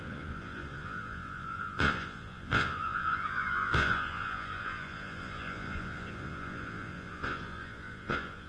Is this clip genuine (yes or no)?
no